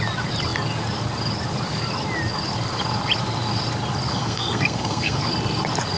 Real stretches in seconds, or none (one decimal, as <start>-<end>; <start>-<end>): 0.0-4.1; 5.2-6.0